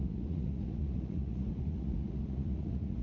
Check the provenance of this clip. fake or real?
fake